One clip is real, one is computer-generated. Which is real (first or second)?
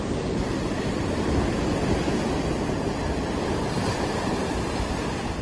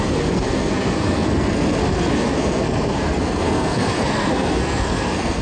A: first